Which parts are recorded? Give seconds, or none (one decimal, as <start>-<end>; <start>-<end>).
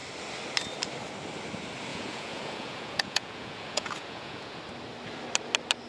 0.0-1.9; 4.6-5.9